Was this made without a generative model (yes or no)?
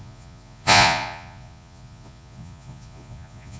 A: no